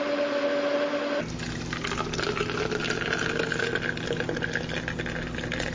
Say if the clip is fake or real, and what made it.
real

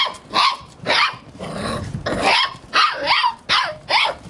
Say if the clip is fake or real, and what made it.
real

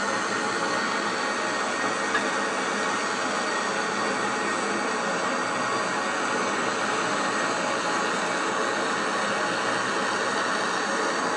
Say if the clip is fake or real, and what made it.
real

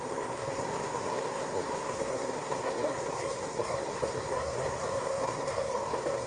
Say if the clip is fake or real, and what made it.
fake, codec, SNAC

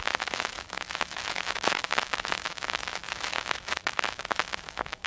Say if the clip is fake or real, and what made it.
fake, autoencoder, DAC-VAE